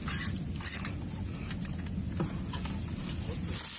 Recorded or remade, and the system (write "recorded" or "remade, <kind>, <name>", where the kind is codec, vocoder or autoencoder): recorded